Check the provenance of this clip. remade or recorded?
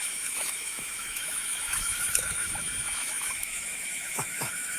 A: remade